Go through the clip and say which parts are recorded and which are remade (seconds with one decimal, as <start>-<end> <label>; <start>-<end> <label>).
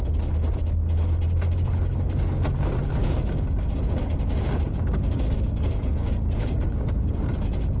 0.0-3.0 recorded; 3.0-7.1 remade; 7.1-7.8 recorded